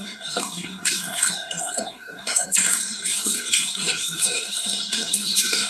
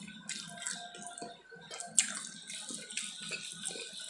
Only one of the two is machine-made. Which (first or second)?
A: first